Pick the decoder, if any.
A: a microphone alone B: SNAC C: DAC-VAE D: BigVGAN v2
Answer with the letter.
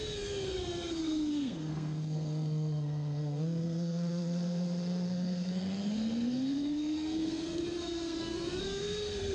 B